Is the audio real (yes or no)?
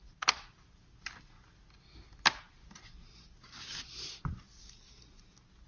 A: yes